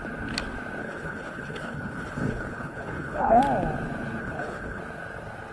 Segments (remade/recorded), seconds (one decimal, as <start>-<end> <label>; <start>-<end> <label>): 0.0-0.8 recorded; 0.8-3.4 remade; 3.4-4.2 recorded; 4.2-4.8 remade; 4.8-5.5 recorded